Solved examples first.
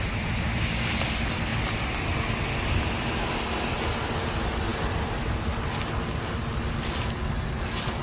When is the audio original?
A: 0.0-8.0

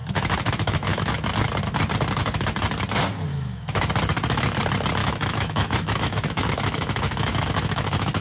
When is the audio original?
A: 1.1-3.3; 3.9-5.0

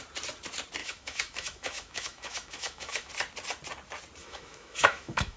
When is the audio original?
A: 0.0-0.8; 3.1-4.2

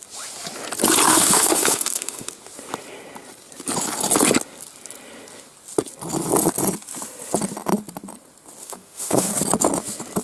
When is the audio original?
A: 0.0-1.1; 2.3-8.6; 9.3-10.2

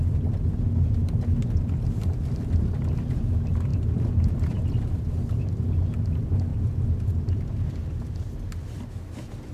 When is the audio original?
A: 0.0-9.5

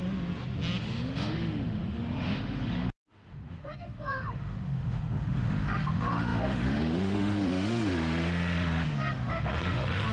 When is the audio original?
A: 0.0-0.8